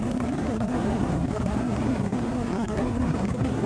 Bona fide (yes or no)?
no